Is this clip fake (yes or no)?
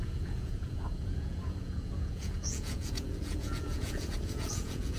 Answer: yes